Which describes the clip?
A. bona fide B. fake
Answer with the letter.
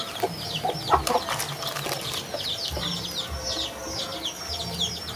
A